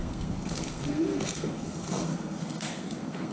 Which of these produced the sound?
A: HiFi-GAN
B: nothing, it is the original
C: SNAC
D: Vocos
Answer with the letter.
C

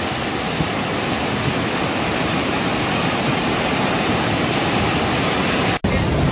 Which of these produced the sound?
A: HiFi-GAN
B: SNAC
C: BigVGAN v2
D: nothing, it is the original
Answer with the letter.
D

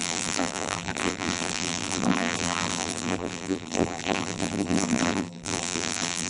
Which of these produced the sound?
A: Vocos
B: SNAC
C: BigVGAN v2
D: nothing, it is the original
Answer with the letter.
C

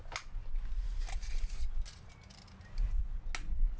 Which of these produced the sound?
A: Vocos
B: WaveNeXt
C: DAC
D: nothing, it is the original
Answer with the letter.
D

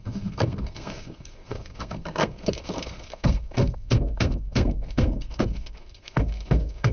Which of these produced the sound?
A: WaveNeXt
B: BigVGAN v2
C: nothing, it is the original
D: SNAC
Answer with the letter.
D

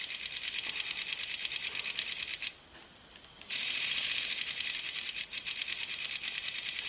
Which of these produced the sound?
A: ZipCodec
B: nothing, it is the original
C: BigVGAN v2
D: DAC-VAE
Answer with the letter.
B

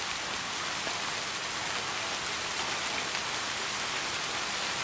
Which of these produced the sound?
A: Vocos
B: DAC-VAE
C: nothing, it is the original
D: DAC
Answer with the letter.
C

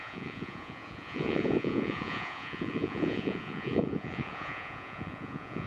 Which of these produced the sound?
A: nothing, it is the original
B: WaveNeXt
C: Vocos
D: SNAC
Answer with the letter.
C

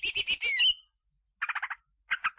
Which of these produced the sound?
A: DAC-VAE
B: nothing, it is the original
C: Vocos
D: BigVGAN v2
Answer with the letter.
B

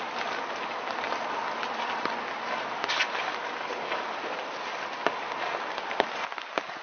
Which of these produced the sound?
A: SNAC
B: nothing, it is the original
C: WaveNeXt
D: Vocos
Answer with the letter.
B